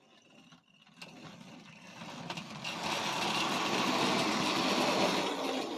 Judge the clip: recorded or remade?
recorded